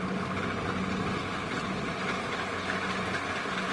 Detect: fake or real real